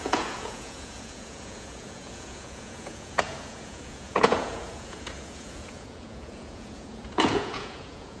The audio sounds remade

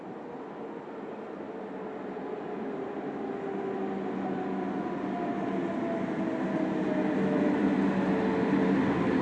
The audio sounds recorded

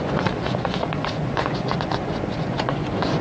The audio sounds remade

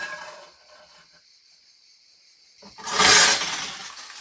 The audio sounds recorded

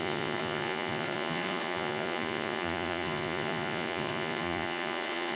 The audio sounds remade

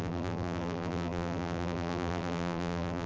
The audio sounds remade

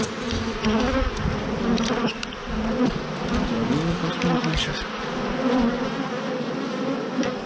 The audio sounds recorded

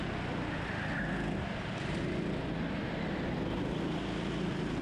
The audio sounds recorded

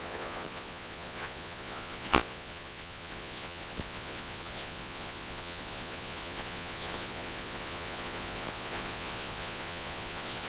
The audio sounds remade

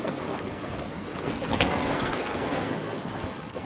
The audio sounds remade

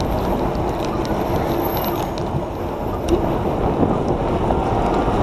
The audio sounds recorded